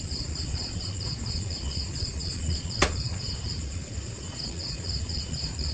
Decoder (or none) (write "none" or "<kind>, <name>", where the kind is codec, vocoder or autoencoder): vocoder, Vocos